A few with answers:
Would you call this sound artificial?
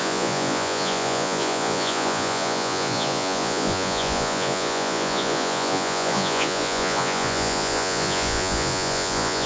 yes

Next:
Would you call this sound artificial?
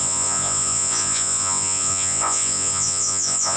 yes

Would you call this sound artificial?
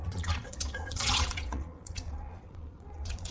yes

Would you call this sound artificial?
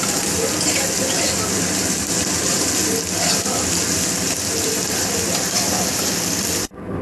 no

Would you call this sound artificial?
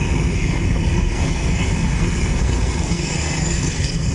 yes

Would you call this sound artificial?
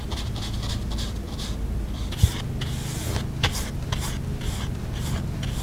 no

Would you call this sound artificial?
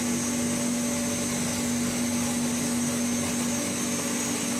no